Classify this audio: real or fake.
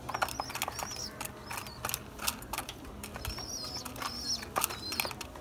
real